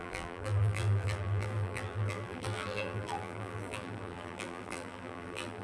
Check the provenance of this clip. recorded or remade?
remade